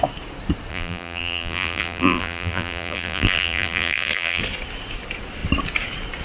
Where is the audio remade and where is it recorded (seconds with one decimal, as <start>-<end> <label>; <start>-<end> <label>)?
0.0-0.7 recorded; 0.7-4.4 remade; 4.4-6.2 recorded